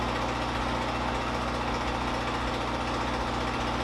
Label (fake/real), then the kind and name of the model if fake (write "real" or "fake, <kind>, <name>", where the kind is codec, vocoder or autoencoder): real